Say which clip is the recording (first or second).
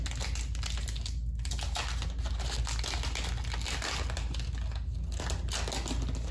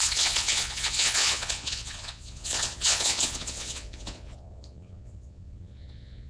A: first